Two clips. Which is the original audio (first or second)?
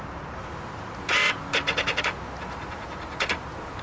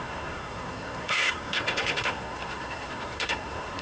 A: first